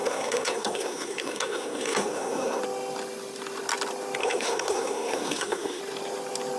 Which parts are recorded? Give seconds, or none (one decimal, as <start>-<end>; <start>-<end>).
2.6-4.2; 5.8-6.6